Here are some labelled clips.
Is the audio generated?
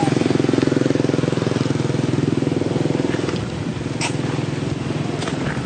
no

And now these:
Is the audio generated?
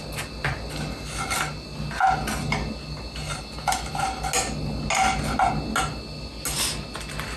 no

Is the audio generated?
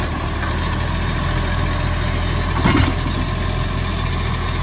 no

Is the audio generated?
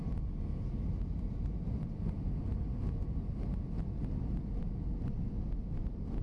no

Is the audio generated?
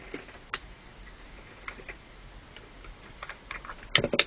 no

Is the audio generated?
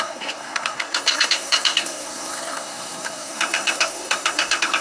yes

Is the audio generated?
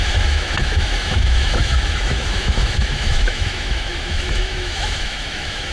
yes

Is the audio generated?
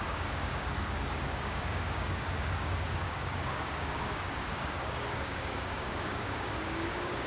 yes